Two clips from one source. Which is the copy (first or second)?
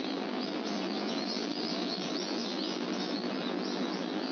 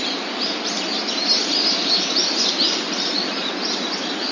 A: first